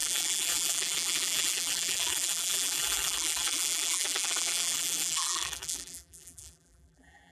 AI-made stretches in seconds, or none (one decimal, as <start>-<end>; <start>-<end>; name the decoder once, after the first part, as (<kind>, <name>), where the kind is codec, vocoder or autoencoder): 0.0-7.3 (vocoder, BigVGAN v2)